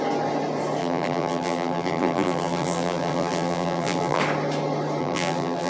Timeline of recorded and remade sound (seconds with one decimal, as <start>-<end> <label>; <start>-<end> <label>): 0.0-0.8 recorded; 0.8-4.2 remade; 4.2-5.0 recorded; 5.0-5.7 remade